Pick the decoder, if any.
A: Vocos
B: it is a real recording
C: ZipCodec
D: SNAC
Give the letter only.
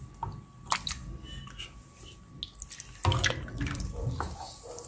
B